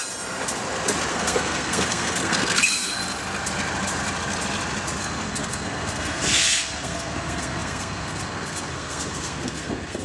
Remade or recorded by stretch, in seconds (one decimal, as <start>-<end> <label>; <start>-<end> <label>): 0.0-1.1 recorded; 1.1-3.0 remade; 3.0-5.0 recorded; 5.0-10.0 remade